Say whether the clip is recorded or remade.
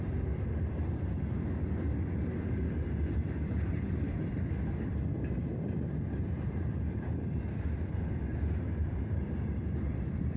remade